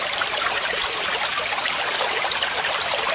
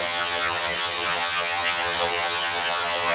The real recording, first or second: first